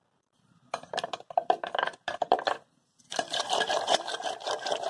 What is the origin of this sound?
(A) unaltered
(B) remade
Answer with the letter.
B